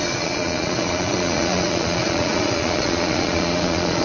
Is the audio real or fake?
fake